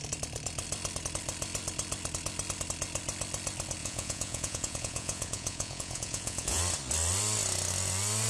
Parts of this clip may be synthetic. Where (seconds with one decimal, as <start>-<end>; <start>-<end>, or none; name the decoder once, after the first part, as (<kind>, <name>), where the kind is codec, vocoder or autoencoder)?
3.8-6.6 (vocoder, Vocos)